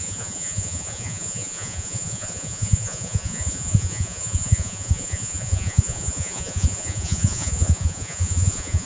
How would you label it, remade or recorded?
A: remade